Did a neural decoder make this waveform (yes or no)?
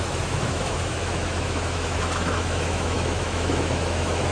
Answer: yes